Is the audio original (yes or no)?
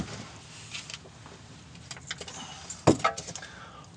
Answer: yes